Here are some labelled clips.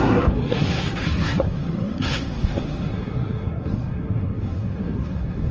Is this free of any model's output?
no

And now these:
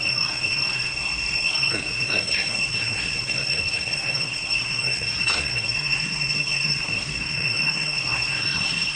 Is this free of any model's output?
no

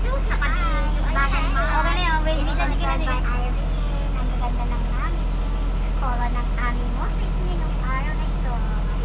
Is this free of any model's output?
yes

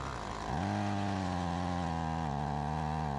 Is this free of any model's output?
yes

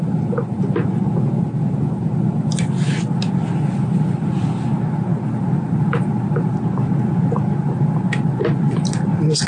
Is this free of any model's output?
yes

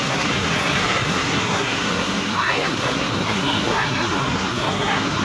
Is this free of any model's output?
no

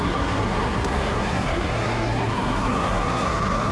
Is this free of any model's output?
no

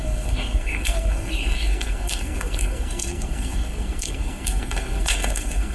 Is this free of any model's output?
no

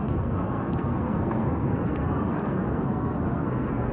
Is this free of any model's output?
no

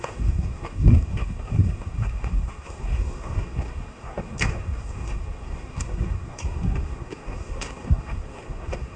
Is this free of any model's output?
no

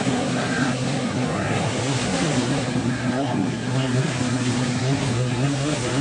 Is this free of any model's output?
no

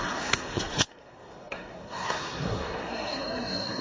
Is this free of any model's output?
no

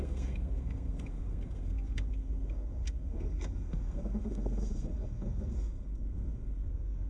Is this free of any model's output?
no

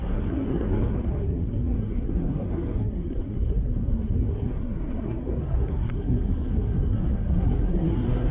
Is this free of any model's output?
no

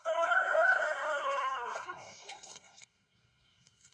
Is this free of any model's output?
no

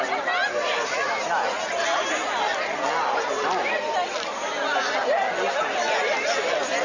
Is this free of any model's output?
yes